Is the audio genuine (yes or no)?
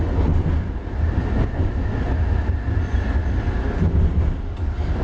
yes